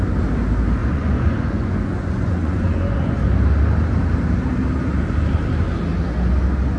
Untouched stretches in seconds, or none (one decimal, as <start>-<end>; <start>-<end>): 0.0-0.8; 3.2-6.8